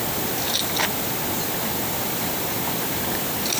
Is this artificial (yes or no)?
no